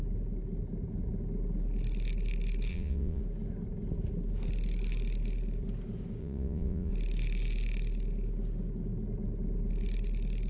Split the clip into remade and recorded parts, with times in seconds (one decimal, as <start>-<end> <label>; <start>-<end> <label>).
0.0-2.7 recorded; 2.7-3.2 remade; 3.2-6.2 recorded; 6.2-6.9 remade; 6.9-10.5 recorded